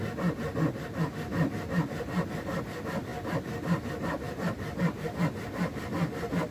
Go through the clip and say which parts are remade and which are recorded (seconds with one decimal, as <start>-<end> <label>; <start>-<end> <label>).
0.0-6.5 recorded